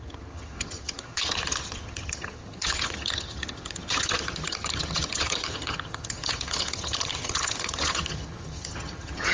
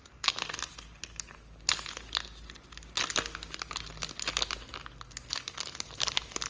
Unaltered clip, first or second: second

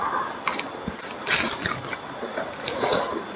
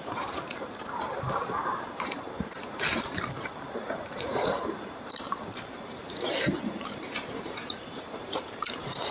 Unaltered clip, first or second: first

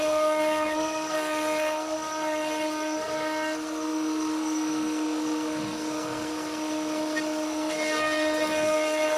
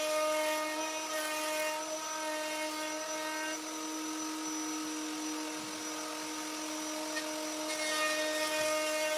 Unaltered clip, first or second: second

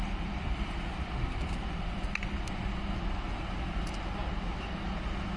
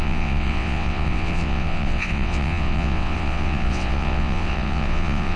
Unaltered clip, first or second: first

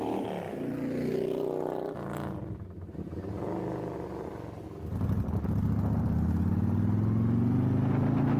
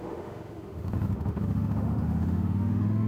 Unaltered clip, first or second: first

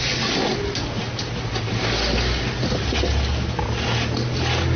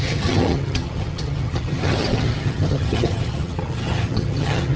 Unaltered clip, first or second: first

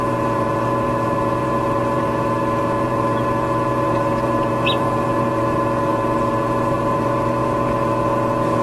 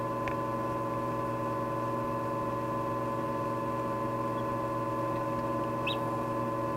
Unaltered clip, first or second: second